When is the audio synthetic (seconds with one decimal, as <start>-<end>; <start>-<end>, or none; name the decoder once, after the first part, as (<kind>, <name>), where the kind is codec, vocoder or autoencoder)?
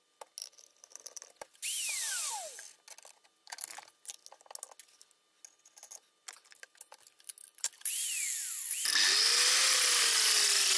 0.4-2.3 (vocoder, BigVGAN v2); 7.5-8.5